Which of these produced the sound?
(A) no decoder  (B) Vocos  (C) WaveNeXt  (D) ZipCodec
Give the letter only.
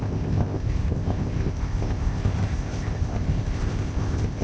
D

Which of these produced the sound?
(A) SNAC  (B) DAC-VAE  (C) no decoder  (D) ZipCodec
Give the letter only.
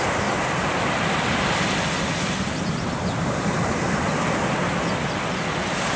C